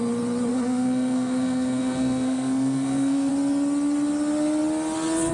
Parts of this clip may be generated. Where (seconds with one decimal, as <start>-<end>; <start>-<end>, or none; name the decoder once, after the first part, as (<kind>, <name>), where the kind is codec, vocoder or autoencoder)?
0.5-3.3 (codec, SNAC)